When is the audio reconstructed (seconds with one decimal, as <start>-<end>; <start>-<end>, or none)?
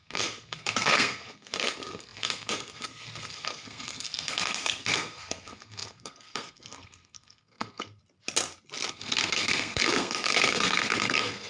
0.0-8.0; 8.9-11.5